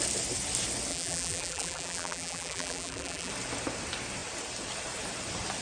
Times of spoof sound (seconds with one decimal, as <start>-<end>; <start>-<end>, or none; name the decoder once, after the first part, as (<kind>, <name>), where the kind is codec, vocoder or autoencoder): 0.9-3.3 (vocoder, BigVGAN v2)